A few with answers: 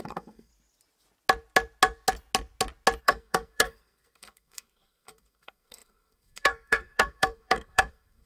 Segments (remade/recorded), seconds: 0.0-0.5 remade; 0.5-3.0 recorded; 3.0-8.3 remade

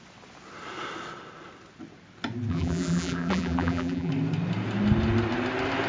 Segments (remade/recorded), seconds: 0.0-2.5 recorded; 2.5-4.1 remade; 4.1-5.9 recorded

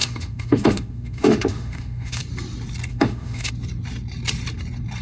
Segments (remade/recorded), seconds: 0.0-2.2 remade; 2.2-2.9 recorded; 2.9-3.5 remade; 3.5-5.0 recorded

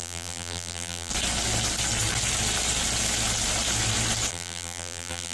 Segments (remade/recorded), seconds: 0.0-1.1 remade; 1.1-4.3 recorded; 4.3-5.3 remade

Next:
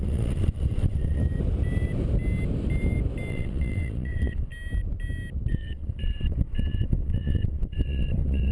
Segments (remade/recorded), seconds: 0.0-1.2 remade; 1.2-3.3 recorded; 3.3-4.5 remade; 4.5-5.5 recorded; 5.5-8.5 remade

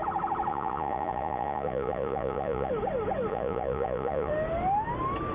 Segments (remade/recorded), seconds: 0.0-0.5 recorded; 0.5-2.7 remade; 2.7-3.3 recorded; 3.3-4.3 remade; 4.3-5.3 recorded

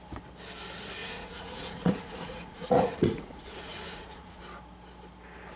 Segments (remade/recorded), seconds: 0.0-1.0 recorded; 1.0-4.4 remade; 4.4-5.6 recorded